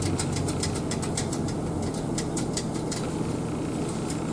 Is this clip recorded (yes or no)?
yes